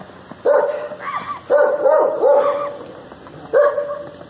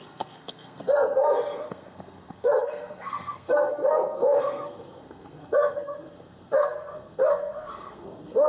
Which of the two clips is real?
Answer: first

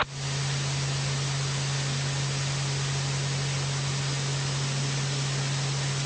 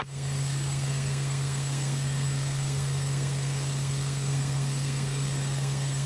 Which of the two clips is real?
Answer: first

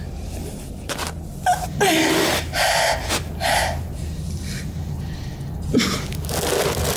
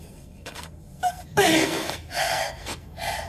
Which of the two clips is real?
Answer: first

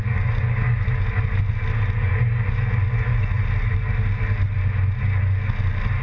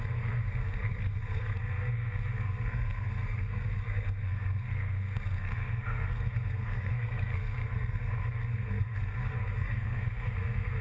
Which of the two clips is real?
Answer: first